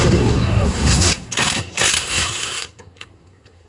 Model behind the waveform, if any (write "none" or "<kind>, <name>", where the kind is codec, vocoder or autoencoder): codec, SNAC